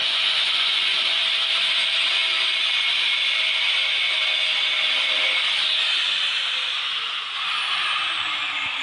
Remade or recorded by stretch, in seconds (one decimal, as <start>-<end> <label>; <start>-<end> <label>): 0.0-1.2 remade; 1.2-8.8 recorded